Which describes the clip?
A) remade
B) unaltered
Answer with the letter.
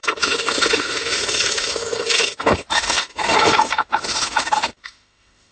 A